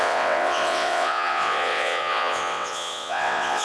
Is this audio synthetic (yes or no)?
yes